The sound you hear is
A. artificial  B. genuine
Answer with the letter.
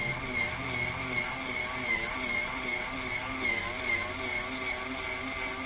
B